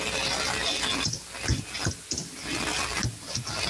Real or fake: real